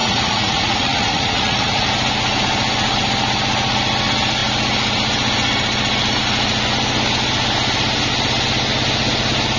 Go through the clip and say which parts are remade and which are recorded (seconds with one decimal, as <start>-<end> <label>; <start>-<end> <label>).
0.0-1.9 remade; 1.9-9.6 recorded